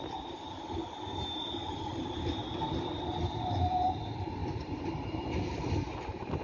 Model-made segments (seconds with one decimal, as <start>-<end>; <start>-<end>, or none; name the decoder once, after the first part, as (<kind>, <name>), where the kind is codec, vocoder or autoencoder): 0.0-2.4 (vocoder, BigVGAN v2); 3.2-4.4; 5.0-6.4